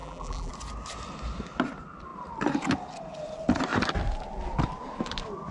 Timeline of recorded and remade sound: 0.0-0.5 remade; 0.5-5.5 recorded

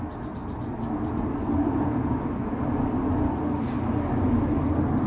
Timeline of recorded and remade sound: 0.0-5.1 recorded

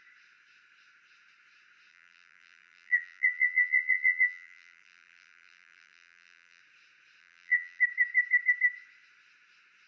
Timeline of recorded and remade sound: 0.0-1.9 recorded; 1.9-6.6 remade; 6.6-7.2 recorded; 7.2-7.8 remade; 7.8-9.9 recorded